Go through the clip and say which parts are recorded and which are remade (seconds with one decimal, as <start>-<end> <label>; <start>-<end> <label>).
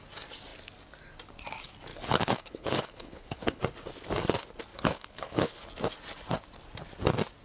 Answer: 0.0-1.9 recorded; 1.9-3.6 remade; 3.6-4.7 recorded; 4.7-5.6 remade; 5.6-7.4 recorded